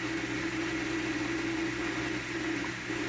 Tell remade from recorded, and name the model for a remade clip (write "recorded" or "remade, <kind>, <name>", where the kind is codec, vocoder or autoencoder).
recorded